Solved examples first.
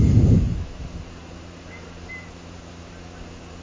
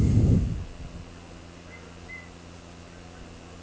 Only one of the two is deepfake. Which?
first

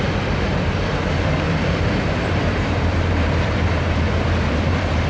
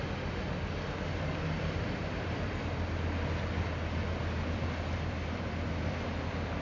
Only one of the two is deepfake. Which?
first